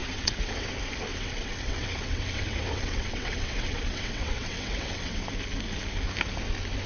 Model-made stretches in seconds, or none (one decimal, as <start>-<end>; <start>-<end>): 0.0-0.7; 1.1-5.2